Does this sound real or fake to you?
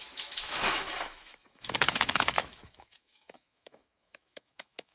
fake